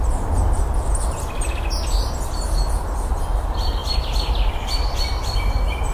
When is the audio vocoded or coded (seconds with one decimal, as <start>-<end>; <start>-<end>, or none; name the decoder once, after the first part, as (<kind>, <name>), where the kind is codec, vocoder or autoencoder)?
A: 3.8-4.9 (vocoder, BigVGAN v2)